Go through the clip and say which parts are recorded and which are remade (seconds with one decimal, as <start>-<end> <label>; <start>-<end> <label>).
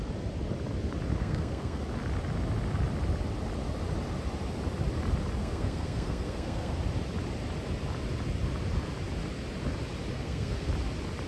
0.0-1.2 recorded; 1.2-1.8 remade; 1.8-5.4 recorded; 5.4-6.7 remade; 6.7-10.1 recorded; 10.1-10.7 remade; 10.7-11.3 recorded